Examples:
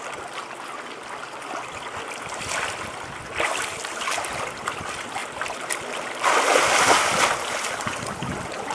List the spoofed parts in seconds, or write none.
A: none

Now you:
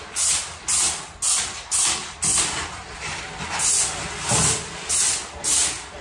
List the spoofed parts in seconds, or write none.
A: 2.3-3.2 (vocoder, BigVGAN v2)

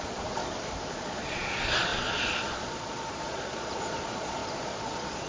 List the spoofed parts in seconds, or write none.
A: 0.0-0.4 (vocoder, Vocos); 0.9-5.3

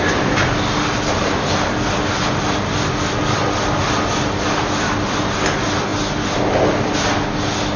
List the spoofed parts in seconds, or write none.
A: none

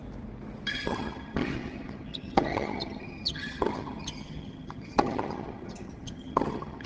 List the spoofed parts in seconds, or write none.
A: 0.7-6.9 (vocoder, HiFi-GAN)

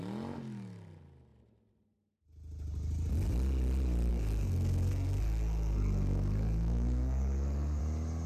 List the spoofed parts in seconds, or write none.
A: 4.1-7.8 (codec, SNAC)

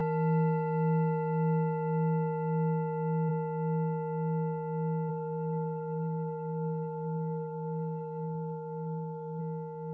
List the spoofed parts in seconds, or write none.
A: 5.1-9.4 (codec, SNAC)

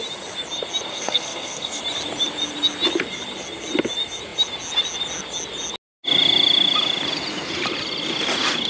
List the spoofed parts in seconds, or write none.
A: 0.9-1.8 (codec, SNAC)